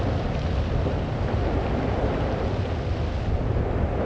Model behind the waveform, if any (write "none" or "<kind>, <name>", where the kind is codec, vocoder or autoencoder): none